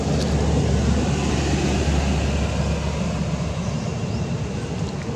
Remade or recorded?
recorded